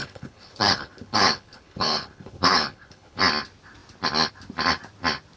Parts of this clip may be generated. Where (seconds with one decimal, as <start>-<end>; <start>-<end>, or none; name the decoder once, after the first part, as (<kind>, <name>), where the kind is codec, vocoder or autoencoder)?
0.0-3.2 (codec, HILCodec)